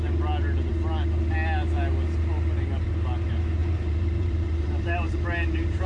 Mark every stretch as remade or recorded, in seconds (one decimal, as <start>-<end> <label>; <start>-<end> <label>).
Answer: 0.0-3.6 recorded; 3.6-5.9 remade